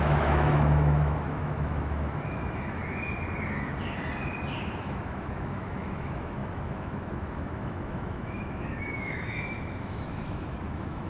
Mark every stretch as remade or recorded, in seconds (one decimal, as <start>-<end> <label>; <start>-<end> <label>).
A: 0.0-2.8 remade; 2.8-4.8 recorded; 4.8-11.1 remade